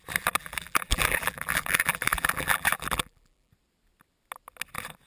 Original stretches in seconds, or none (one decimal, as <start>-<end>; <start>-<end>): 0.0-0.4; 3.5-5.1